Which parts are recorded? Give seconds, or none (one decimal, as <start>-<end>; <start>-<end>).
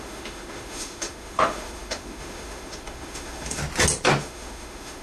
3.6-4.2